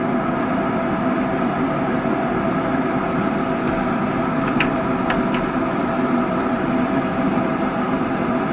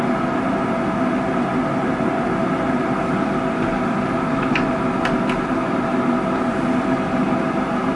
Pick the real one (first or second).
second